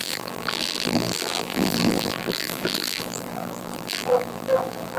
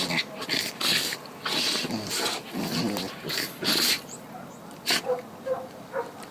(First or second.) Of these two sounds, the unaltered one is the second